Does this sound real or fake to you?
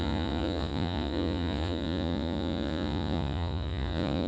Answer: fake